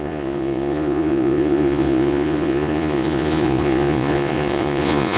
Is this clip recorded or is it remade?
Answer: remade